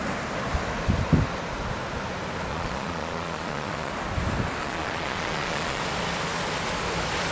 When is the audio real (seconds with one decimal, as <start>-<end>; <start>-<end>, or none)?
0.0-2.5; 3.9-4.6; 5.8-7.3